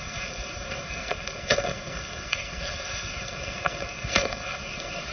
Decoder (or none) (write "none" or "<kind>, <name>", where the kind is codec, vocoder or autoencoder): codec, SNAC